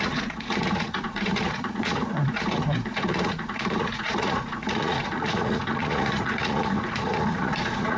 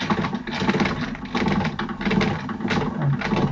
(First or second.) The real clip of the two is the second